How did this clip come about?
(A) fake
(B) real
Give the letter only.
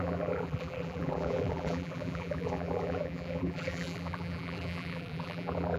A